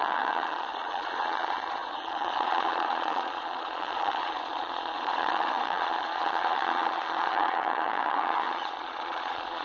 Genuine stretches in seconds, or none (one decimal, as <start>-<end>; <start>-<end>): none